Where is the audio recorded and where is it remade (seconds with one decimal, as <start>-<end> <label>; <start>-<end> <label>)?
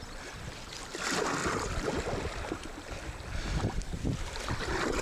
0.0-1.4 recorded; 1.4-4.4 remade; 4.4-5.0 recorded